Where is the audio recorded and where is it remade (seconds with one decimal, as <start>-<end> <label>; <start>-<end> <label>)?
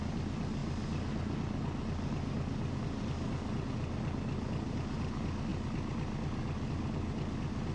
0.0-7.7 recorded